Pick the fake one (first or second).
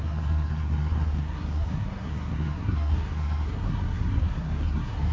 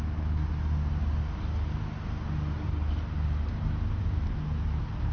first